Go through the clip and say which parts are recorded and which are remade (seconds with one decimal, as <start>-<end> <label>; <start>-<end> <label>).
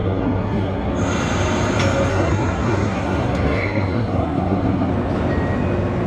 0.0-0.9 remade; 0.9-2.1 recorded; 2.1-4.9 remade; 4.9-6.1 recorded